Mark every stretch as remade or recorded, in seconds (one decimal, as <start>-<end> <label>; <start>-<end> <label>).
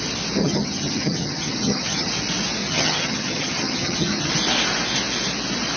0.0-0.4 recorded; 0.4-2.1 remade; 2.1-2.6 recorded; 2.6-4.3 remade; 4.3-5.8 recorded